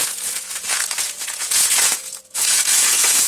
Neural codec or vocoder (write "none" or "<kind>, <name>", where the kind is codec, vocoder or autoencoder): vocoder, Vocos